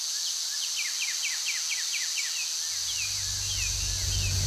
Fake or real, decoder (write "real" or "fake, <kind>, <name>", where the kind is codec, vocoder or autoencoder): real